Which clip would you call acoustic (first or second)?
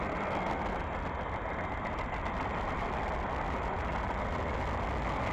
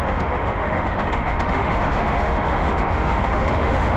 first